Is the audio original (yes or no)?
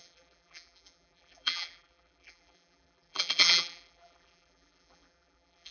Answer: no